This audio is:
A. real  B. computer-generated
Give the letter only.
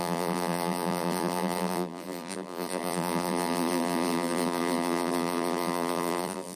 B